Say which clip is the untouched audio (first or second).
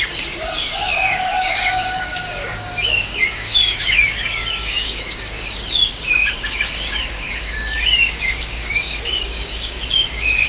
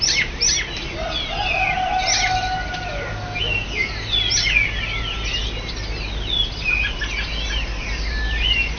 second